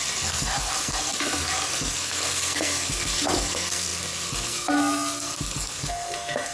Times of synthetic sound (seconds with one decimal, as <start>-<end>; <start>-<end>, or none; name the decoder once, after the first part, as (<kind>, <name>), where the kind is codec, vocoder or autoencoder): 0.0-6.5 (codec, SNAC)